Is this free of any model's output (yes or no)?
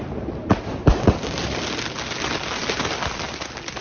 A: yes